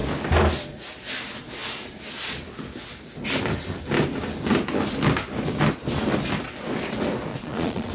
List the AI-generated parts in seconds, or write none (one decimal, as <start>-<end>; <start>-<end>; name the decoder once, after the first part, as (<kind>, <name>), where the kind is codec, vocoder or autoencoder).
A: 7.3-7.9 (vocoder, Vocos)